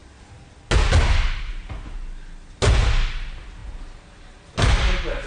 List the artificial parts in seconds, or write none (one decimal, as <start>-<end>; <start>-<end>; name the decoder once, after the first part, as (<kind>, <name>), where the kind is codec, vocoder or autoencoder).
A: none